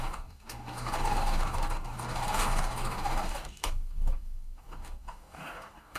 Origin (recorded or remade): remade